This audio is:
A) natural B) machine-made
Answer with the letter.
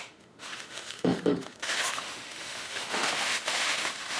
B